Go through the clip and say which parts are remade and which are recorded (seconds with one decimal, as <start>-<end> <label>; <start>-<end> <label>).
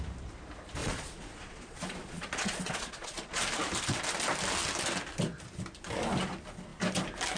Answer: 0.0-0.8 recorded; 0.8-3.4 remade; 3.4-7.4 recorded